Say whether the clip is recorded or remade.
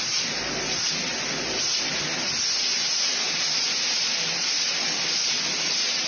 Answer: recorded